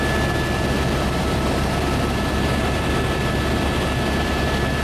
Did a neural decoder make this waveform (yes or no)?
no